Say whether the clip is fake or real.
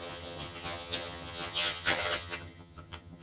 fake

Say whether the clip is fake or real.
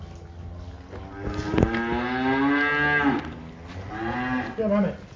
real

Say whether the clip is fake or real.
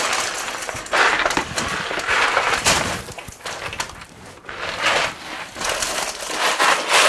real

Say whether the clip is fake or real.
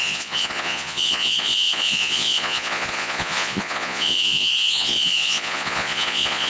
fake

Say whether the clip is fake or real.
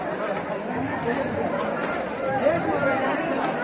fake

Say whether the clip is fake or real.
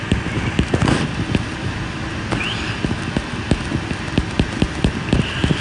real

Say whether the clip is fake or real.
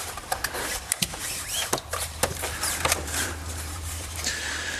fake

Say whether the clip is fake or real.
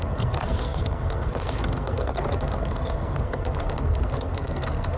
fake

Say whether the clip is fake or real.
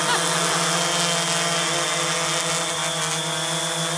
real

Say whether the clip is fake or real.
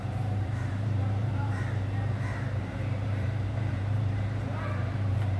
fake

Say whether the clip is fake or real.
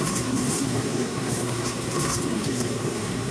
fake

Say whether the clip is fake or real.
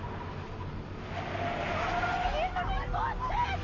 real